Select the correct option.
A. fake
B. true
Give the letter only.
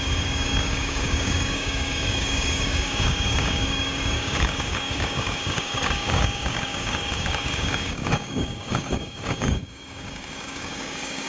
A